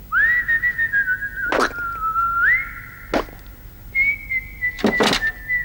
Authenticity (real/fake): real